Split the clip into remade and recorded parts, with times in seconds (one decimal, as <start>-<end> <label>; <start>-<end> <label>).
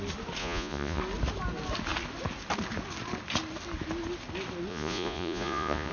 0.0-0.4 recorded; 0.4-1.0 remade; 1.0-4.7 recorded; 4.7-5.9 remade